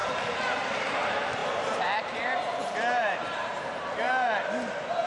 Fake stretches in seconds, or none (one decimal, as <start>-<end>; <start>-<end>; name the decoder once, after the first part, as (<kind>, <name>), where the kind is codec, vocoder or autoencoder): 0.9-5.1 (vocoder, BigVGAN v2)